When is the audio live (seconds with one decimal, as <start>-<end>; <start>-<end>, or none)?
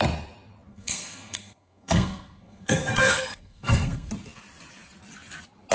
0.0-0.7; 4.1-5.7